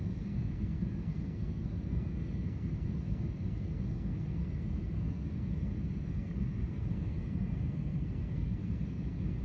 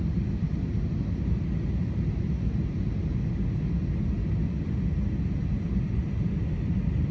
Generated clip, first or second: first